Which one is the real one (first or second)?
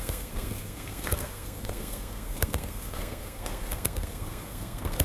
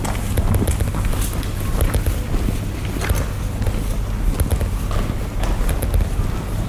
second